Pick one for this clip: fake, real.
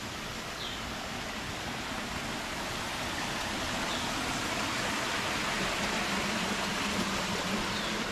real